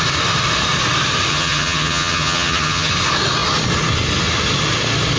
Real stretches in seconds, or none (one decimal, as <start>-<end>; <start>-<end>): 0.0-1.3; 2.9-5.2

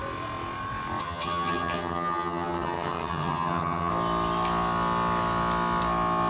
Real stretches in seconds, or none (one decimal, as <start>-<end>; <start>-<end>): 0.0-1.0; 3.9-6.3

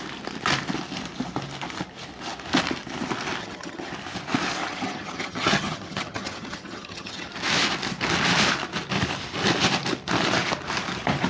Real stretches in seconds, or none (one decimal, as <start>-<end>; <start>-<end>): 0.0-3.4; 3.9-4.6; 7.3-11.3

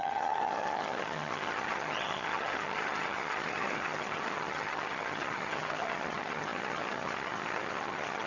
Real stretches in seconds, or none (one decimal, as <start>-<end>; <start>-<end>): none

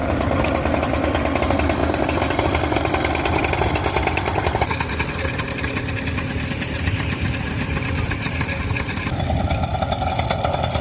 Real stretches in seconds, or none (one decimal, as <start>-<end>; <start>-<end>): 0.0-10.8

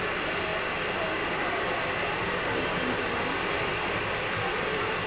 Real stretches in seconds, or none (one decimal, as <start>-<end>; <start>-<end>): 0.0-5.1